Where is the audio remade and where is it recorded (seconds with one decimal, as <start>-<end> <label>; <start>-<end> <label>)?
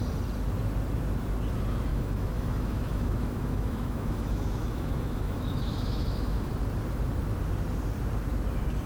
0.0-1.9 recorded; 1.9-6.5 remade; 6.5-8.9 recorded